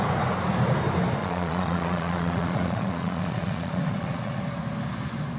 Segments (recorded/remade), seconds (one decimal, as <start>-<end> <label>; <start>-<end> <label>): 0.0-1.2 recorded; 1.2-4.4 remade; 4.4-5.4 recorded